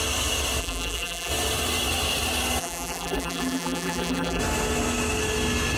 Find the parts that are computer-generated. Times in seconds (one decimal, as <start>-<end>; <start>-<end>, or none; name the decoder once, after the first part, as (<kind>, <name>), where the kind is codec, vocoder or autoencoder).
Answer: 0.6-1.3 (vocoder, BigVGAN v2); 2.6-4.4